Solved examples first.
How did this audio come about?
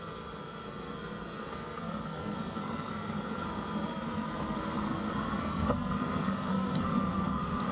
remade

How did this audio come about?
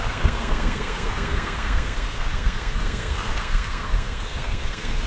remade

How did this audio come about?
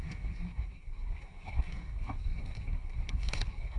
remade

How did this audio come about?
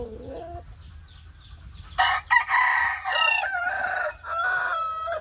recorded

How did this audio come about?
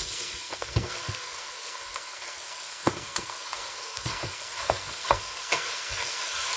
remade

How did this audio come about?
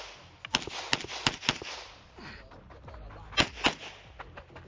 recorded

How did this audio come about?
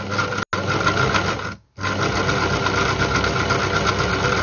recorded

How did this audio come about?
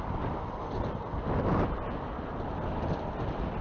recorded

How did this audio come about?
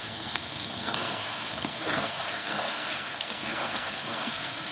remade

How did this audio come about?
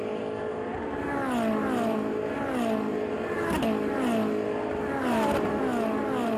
recorded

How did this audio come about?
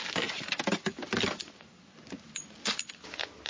recorded